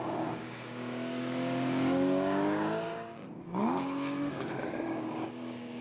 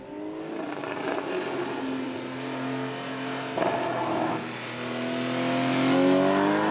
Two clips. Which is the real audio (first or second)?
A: second